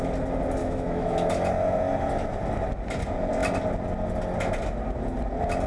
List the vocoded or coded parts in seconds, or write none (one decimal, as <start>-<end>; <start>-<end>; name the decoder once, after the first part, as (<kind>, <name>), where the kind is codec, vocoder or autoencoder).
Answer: 0.6-1.5 (autoencoder, DAC-VAE)